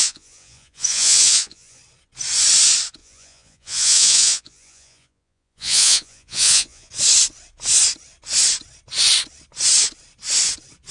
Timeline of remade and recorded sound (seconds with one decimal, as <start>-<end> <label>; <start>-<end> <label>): 0.0-1.8 remade; 1.8-3.0 recorded; 3.0-6.9 remade; 6.9-10.9 recorded